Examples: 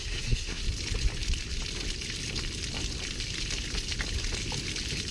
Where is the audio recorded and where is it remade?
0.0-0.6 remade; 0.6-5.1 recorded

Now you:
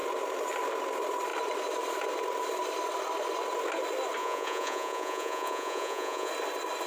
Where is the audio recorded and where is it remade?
0.0-4.2 recorded; 4.2-6.3 remade; 6.3-6.9 recorded

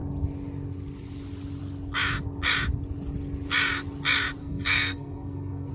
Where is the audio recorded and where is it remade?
0.0-4.4 recorded; 4.4-5.7 remade

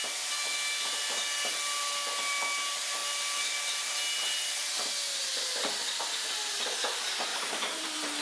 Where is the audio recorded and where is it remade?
0.0-7.3 recorded; 7.3-8.2 remade

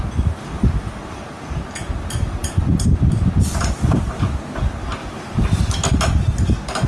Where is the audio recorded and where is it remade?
0.0-5.0 recorded; 5.0-5.6 remade; 5.6-6.9 recorded

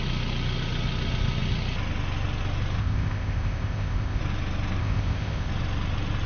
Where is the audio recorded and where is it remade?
0.0-2.8 recorded; 2.8-4.2 remade; 4.2-4.8 recorded; 4.8-5.5 remade; 5.5-6.3 recorded